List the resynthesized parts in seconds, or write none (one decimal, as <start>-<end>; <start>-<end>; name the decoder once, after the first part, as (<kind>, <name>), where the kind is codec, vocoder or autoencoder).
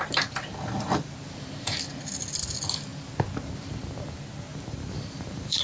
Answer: 0.5-1.1 (vocoder, BigVGAN v2); 4.5-5.6